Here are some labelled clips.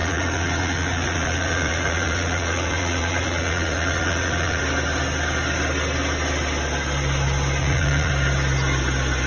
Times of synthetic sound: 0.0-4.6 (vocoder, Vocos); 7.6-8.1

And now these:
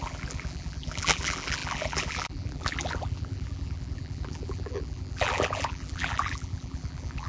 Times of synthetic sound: 0.0-7.3 (vocoder, BigVGAN v2)

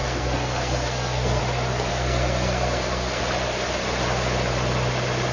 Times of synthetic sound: 0.0-1.4 (codec, SNAC); 1.9-3.2

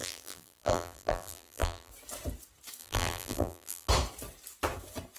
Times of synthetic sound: 0.0-1.9 (vocoder, BigVGAN v2); 2.8-3.9

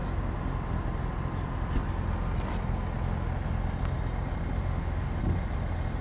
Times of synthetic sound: 4.6-5.2 (autoencoder, DAC-VAE)

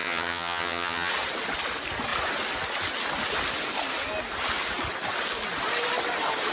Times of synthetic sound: 0.0-1.1 (vocoder, HiFi-GAN)